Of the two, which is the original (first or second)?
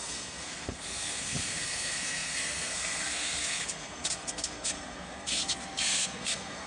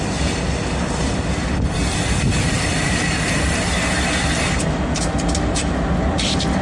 second